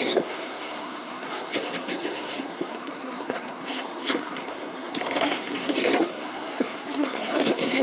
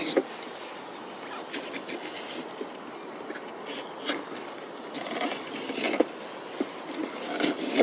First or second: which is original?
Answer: second